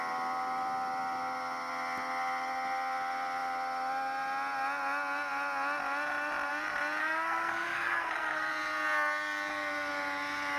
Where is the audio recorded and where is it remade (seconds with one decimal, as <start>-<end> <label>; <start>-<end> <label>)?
0.0-7.0 recorded; 7.0-8.5 remade; 8.5-10.6 recorded